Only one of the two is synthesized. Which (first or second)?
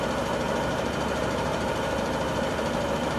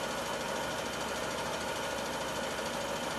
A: first